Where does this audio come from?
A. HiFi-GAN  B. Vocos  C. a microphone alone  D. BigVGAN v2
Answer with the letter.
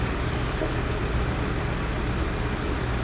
C